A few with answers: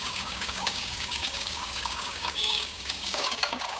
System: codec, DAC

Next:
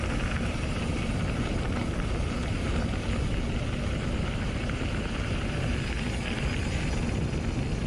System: none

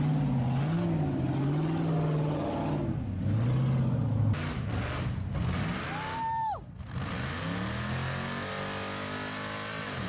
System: none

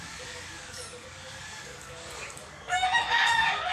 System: codec, DAC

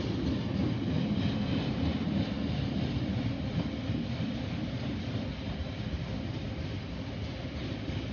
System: none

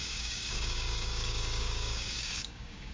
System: codec, DAC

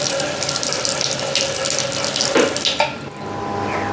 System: none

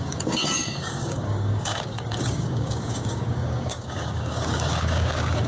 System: codec, DAC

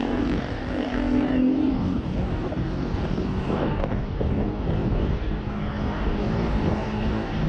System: codec, DAC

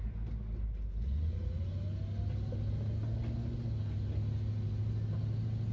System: none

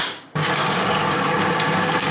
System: codec, DAC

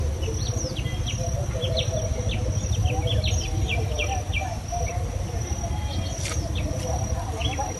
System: none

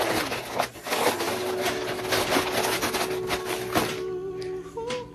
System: none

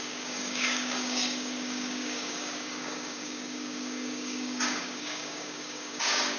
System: codec, DAC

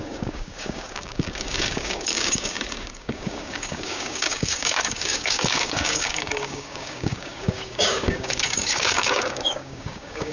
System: codec, DAC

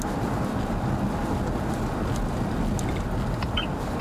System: none